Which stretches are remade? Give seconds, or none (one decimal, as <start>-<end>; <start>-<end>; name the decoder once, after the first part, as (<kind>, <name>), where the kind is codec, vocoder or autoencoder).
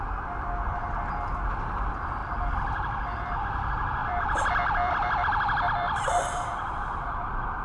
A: 2.2-3.4 (vocoder, BigVGAN v2); 4.0-7.6